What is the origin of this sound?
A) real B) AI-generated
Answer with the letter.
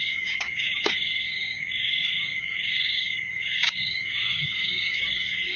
B